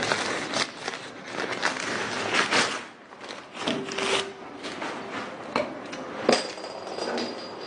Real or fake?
real